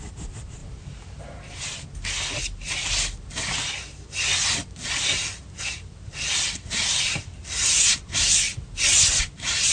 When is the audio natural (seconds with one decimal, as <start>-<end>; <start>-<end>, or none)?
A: 0.0-5.1; 5.9-9.7